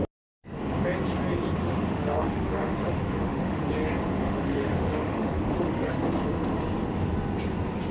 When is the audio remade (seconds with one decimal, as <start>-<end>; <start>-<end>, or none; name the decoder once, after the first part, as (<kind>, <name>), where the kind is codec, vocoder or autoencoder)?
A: 1.6-3.7 (autoencoder, DAC-VAE); 4.2-5.9